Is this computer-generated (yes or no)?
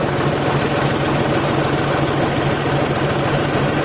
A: no